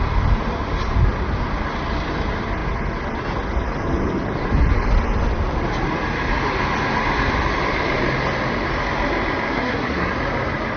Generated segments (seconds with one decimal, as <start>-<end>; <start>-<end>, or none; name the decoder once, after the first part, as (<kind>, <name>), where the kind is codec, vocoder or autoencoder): 9.5-10.1 (codec, SNAC)